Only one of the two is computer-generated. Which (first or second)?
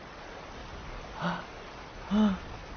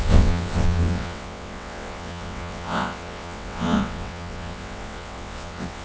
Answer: second